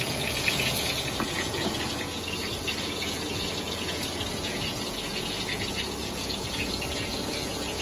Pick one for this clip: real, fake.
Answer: fake